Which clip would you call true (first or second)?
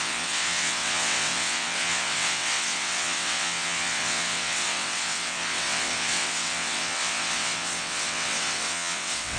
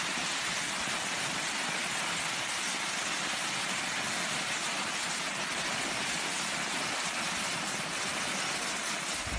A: second